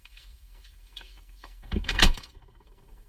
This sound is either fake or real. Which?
fake